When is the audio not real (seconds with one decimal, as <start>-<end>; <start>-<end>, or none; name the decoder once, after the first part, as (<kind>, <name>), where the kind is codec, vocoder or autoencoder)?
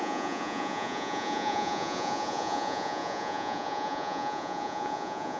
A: 0.0-5.4 (vocoder, Vocos)